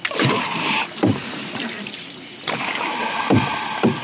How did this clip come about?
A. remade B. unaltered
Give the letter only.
B